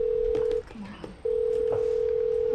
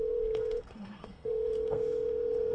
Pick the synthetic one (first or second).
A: second